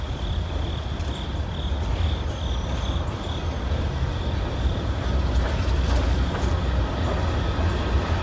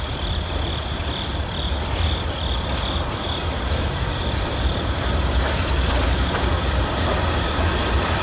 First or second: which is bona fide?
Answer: first